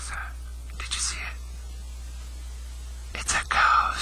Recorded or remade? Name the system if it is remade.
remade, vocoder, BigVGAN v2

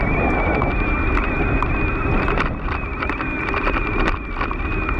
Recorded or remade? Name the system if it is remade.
recorded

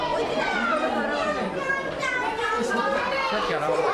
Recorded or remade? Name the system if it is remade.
remade, vocoder, BigVGAN v2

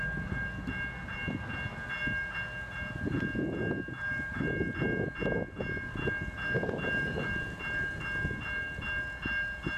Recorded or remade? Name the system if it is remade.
recorded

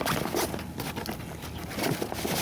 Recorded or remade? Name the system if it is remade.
recorded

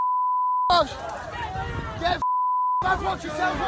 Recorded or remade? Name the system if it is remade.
recorded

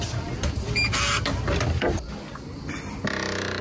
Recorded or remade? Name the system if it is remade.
recorded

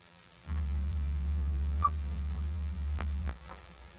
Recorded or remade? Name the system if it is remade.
remade, vocoder, BigVGAN v2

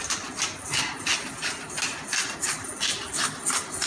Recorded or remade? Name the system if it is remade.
recorded